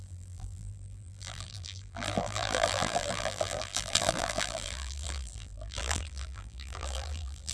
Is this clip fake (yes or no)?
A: yes